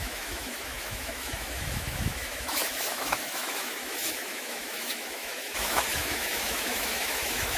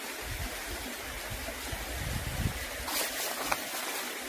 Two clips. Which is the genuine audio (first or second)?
second